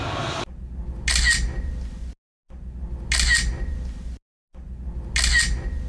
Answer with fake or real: real